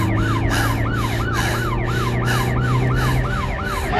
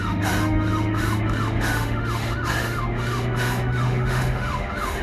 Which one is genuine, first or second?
first